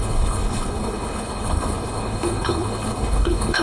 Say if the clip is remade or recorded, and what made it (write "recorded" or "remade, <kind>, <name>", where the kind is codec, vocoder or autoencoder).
remade, codec, HILCodec